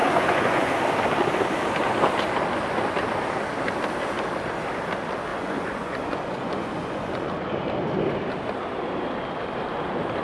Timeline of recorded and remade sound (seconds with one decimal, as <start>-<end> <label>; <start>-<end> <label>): 0.0-0.7 remade; 0.7-5.3 recorded; 5.3-7.3 remade; 7.3-10.2 recorded